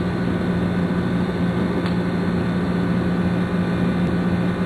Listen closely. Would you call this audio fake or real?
real